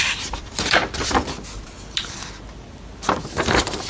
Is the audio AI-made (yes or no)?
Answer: no